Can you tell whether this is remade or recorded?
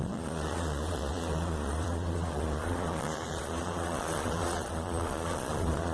remade